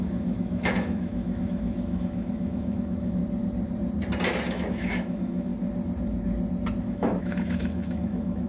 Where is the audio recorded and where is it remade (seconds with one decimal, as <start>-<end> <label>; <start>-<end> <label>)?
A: 0.0-3.2 remade; 3.2-4.5 recorded; 4.5-5.5 remade; 5.5-6.8 recorded; 6.8-8.5 remade